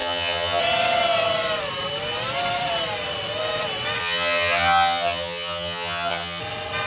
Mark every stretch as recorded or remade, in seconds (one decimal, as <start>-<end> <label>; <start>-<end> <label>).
0.0-0.6 remade; 0.6-4.0 recorded; 4.0-6.4 remade; 6.4-6.9 recorded